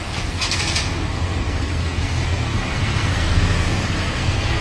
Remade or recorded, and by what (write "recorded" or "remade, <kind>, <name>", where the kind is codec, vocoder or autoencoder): remade, codec, SNAC